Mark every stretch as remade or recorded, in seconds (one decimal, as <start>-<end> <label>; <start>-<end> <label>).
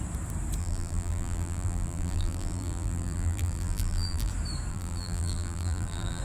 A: 0.0-0.6 recorded; 0.6-4.3 remade; 4.3-4.7 recorded; 4.7-6.2 remade